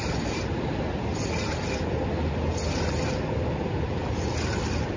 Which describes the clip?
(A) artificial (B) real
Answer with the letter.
B